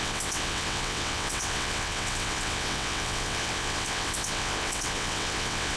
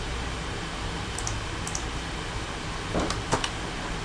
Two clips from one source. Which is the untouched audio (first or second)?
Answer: second